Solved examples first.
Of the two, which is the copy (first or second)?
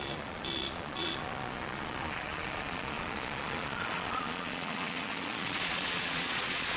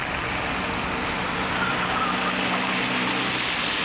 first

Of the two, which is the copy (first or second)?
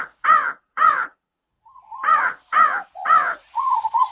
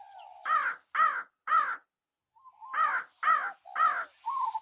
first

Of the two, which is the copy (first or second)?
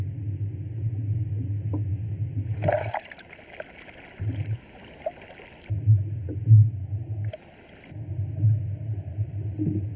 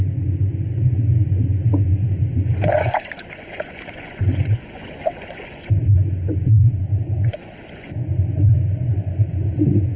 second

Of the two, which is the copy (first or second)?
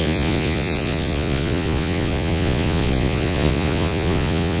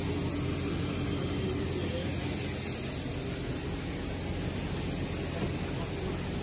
first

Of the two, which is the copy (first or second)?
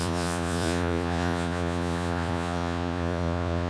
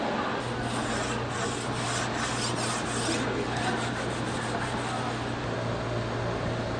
first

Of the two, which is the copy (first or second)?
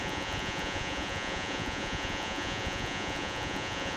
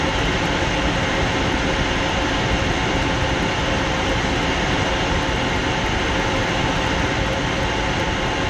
first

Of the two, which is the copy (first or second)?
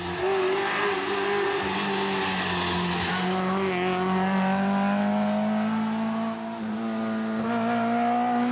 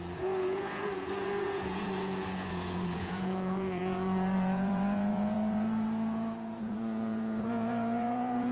second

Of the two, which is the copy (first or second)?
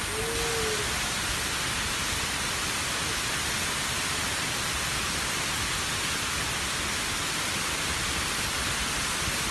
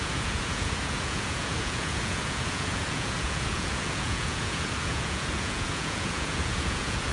second